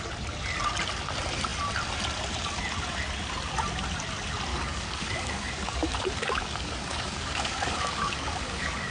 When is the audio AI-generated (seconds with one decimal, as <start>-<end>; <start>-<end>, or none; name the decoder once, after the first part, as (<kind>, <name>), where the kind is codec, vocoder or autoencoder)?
4.5-8.9 (codec, DAC)